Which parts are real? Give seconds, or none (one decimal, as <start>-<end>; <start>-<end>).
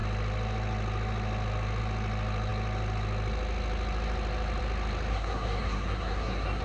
0.0-5.1